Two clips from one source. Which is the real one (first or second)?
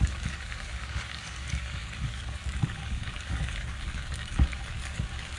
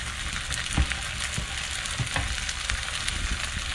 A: second